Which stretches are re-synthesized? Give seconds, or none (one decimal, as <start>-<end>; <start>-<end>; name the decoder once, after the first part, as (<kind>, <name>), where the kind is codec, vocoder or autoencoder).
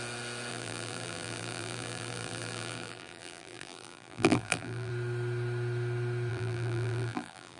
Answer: 0.5-4.9 (vocoder, BigVGAN v2); 6.3-7.6